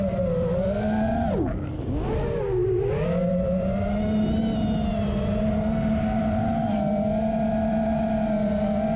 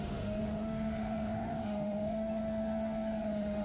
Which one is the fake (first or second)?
second